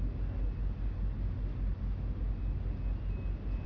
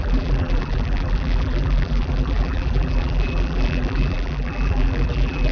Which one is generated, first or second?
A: second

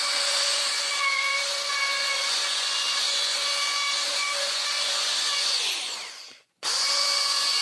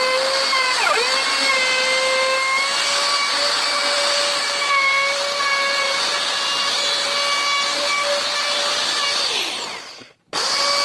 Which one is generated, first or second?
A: first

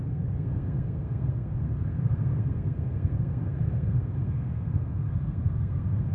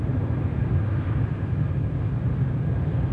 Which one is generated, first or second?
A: first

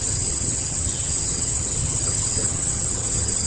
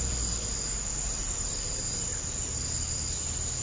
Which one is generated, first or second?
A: first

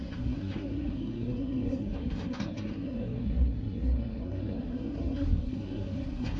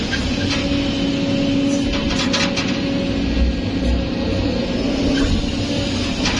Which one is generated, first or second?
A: first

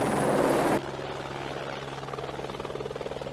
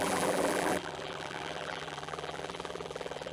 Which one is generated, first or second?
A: second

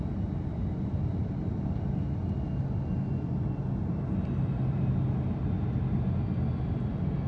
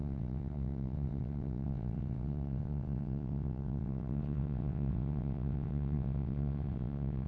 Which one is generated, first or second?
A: second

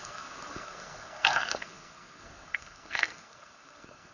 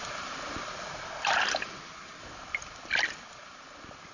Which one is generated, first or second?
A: first